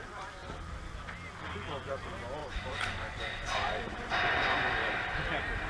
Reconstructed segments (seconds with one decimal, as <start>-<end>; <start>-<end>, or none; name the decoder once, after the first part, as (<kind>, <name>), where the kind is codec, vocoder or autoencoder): 2.4-4.7 (vocoder, Vocos)